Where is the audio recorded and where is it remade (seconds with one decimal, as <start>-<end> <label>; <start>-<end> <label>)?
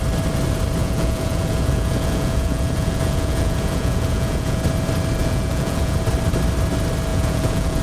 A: 0.0-0.8 recorded; 0.8-4.6 remade; 4.6-5.2 recorded; 5.2-6.0 remade; 6.0-7.1 recorded; 7.1-7.8 remade